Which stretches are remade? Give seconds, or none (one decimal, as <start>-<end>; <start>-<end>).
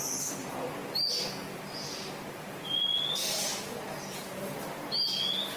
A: none